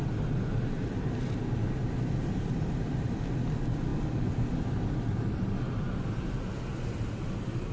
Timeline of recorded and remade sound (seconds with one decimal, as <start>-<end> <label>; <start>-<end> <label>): 0.0-7.7 recorded